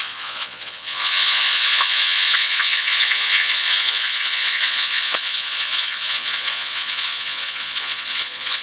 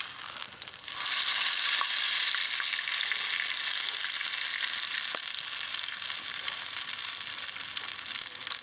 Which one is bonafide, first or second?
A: second